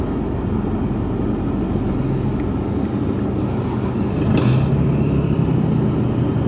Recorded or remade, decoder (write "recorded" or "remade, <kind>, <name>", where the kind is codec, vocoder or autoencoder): recorded